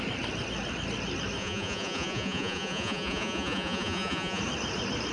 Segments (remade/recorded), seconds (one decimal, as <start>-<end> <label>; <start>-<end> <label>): 0.0-1.4 recorded; 1.4-4.4 remade; 4.4-5.1 recorded